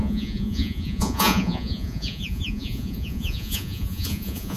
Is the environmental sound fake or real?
fake